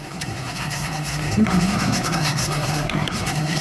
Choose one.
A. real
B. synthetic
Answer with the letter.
B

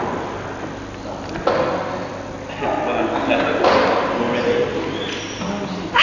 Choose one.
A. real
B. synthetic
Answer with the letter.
A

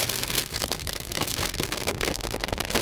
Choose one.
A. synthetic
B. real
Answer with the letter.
A